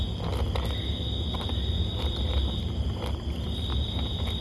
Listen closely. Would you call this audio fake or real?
real